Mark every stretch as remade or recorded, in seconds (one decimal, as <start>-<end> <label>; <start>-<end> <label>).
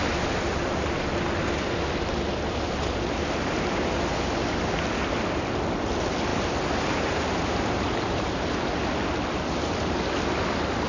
0.0-6.3 recorded; 6.3-8.2 remade; 8.2-10.9 recorded